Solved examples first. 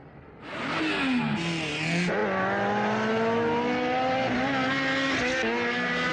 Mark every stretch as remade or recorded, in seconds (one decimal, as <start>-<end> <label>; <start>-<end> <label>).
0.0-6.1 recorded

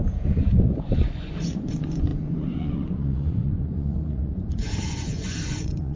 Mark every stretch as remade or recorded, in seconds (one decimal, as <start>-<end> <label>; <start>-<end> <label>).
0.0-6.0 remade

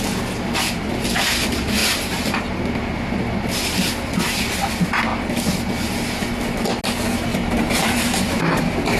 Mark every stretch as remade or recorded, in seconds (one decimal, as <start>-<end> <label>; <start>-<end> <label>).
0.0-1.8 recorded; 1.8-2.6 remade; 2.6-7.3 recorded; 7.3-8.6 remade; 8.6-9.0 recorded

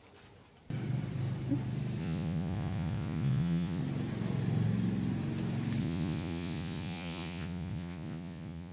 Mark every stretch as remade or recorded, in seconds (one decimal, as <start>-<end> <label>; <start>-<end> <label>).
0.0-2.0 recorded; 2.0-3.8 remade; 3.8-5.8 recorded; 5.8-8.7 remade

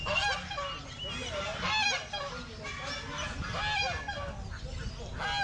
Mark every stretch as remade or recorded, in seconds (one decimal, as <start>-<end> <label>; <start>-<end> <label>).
0.0-5.4 recorded

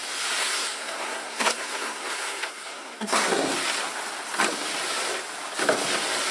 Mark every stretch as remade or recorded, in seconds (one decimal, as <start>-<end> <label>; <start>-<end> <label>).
0.0-0.4 recorded; 0.4-3.5 remade; 3.5-6.3 recorded